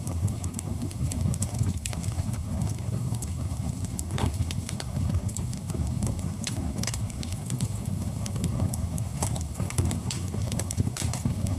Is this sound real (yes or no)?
no